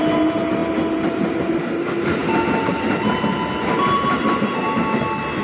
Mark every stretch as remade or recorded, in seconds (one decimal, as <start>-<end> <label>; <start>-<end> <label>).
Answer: 0.0-5.4 recorded